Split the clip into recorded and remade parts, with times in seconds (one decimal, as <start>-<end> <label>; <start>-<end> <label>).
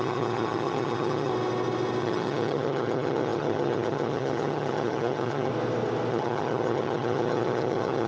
0.0-1.3 remade; 1.3-2.0 recorded; 2.0-5.5 remade; 5.5-6.1 recorded; 6.1-8.1 remade